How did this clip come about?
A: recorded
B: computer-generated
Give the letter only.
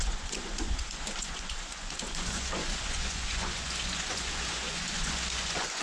B